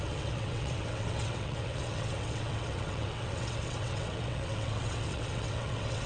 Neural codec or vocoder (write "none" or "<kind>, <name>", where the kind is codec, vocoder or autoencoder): vocoder, WaveNeXt